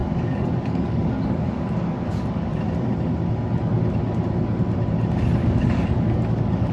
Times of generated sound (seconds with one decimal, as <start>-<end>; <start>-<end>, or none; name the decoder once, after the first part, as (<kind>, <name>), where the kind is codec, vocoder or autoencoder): 0.0-2.6 (codec, DAC); 5.4-6.7